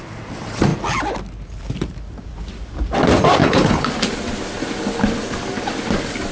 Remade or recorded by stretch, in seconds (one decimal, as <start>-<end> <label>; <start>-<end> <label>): 0.0-3.4 recorded; 3.4-3.9 remade; 3.9-6.3 recorded